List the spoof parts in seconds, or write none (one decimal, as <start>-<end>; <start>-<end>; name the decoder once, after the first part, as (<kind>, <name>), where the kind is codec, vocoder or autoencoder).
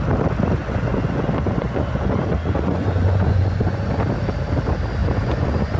0.6-4.0 (vocoder, Vocos); 5.0-5.8